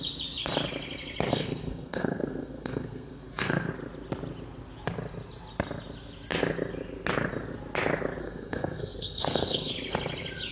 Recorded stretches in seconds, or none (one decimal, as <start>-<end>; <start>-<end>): 0.0-1.3; 3.7-8.2; 9.7-10.5